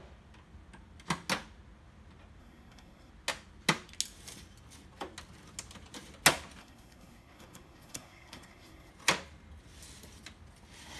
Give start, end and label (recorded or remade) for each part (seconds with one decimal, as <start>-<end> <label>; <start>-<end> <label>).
0.0-2.4 recorded; 2.4-3.1 remade; 3.1-6.6 recorded; 6.6-8.9 remade; 8.9-11.0 recorded